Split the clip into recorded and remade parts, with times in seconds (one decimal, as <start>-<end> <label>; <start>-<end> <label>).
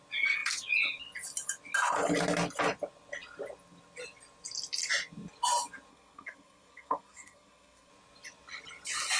0.0-5.9 recorded; 5.9-7.9 remade; 7.9-9.2 recorded